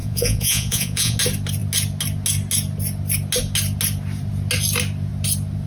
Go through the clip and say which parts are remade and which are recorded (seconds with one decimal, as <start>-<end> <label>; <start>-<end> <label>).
0.0-1.2 remade; 1.2-5.7 recorded